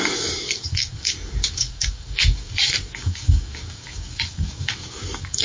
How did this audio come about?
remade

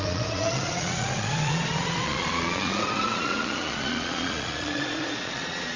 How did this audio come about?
remade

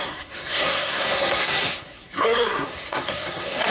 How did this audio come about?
remade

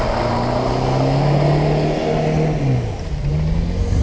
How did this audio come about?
recorded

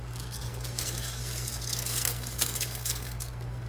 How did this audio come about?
remade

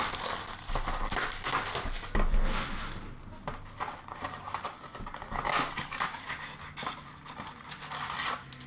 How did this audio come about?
recorded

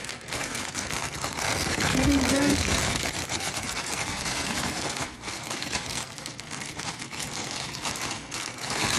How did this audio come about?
remade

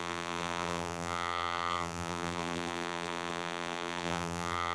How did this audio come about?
remade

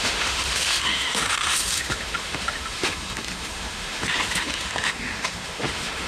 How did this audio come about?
remade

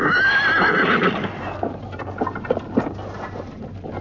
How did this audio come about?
recorded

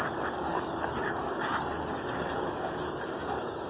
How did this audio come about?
remade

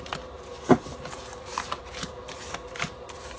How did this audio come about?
recorded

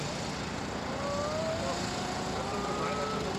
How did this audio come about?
recorded